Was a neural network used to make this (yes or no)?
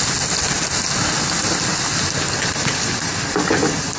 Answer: no